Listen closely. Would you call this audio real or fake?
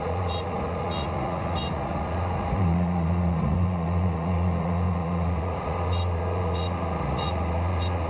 fake